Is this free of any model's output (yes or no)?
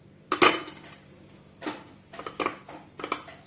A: yes